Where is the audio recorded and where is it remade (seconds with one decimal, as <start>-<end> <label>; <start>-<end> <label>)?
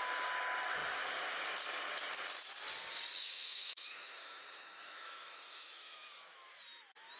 0.0-3.2 recorded; 3.2-6.4 remade; 6.4-7.2 recorded